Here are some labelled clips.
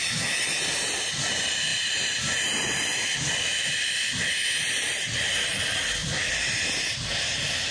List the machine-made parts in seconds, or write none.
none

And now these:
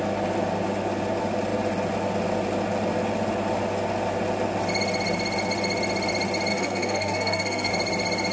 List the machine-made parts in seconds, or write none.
6.5-7.7 (codec, SNAC)